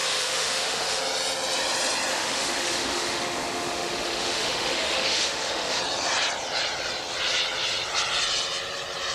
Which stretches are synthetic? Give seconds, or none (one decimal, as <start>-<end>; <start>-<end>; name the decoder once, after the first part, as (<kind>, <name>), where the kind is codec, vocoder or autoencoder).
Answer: 0.0-1.0 (autoencoder, DAC-VAE); 2.1-5.8